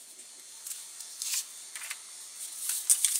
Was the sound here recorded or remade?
recorded